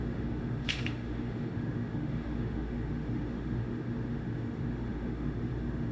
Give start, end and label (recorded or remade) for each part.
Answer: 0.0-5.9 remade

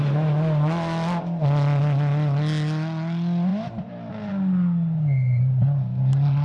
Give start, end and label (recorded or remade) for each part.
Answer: 0.0-6.4 recorded

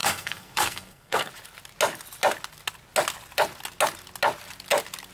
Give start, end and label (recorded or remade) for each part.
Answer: 0.0-1.3 remade; 1.3-5.1 recorded

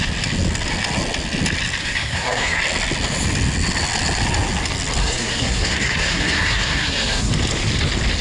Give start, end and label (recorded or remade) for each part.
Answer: 0.0-1.8 recorded; 1.8-2.6 remade; 2.6-5.0 recorded; 5.0-7.3 remade; 7.3-8.2 recorded

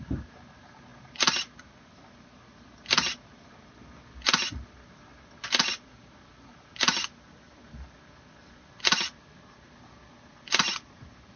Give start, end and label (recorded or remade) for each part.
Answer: 0.0-11.4 recorded

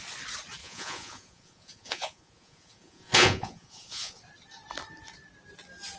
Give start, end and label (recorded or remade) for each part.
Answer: 0.0-0.6 recorded; 0.6-4.2 remade; 4.2-6.0 recorded

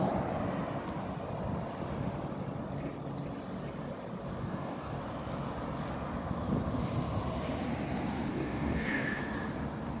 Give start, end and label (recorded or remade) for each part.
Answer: 0.0-4.4 recorded; 4.4-5.0 remade; 5.0-8.3 recorded; 8.3-9.2 remade; 9.2-10.0 recorded

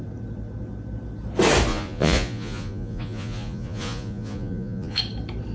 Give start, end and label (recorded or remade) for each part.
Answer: 0.0-1.7 recorded; 1.7-5.0 remade; 5.0-5.5 recorded